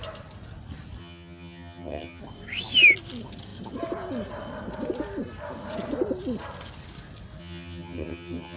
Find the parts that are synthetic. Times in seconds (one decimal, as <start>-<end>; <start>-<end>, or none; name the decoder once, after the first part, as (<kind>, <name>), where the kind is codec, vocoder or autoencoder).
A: 1.0-2.2 (vocoder, HiFi-GAN); 7.4-8.6